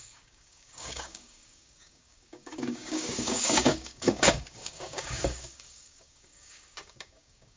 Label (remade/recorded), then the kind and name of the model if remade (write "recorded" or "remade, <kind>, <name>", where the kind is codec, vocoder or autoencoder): remade, codec, DAC